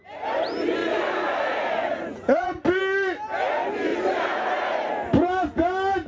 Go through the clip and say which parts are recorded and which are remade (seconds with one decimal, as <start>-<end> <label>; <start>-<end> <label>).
0.0-0.8 recorded; 0.8-2.8 remade; 2.8-3.9 recorded; 3.9-4.9 remade; 4.9-6.1 recorded